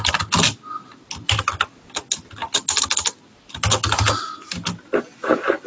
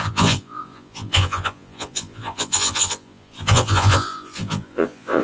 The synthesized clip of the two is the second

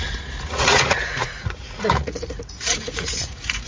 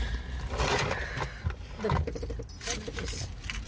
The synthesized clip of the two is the first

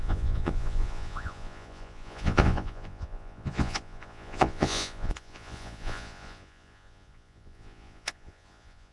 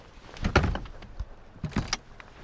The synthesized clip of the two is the first